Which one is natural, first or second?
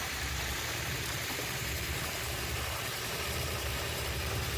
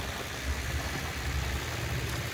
second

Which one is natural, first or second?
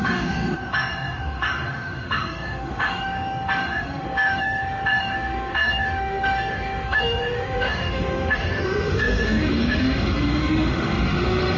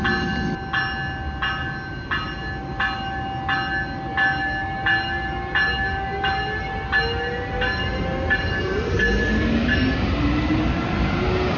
second